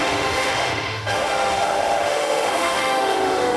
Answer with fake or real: fake